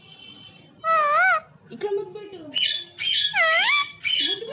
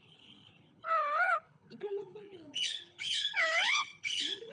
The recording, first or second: first